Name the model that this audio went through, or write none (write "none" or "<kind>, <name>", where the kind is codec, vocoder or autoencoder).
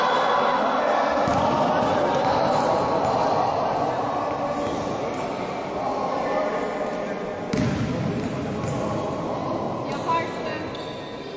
none